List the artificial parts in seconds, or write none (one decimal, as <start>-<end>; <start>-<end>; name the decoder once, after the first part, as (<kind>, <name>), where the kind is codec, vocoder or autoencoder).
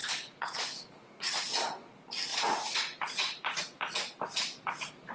0.0-1.4 (vocoder, Vocos); 2.3-3.8